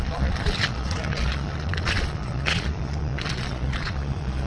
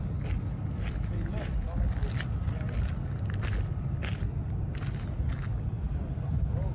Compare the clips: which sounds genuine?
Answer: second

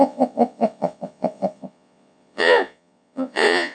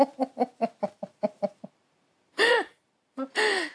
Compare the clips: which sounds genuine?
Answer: second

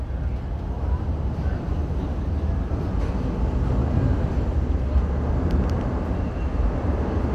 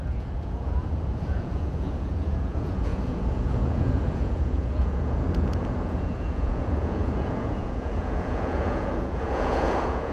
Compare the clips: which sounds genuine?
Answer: first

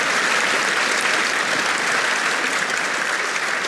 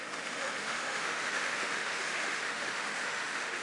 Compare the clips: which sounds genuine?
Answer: first